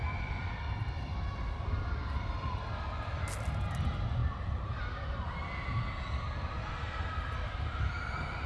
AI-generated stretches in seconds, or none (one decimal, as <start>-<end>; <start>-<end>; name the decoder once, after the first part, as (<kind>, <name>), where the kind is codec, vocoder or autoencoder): none